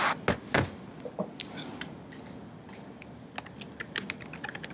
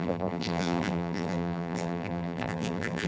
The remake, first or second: second